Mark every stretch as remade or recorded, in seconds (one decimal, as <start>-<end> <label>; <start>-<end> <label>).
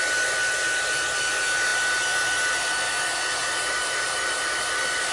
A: 0.0-5.1 recorded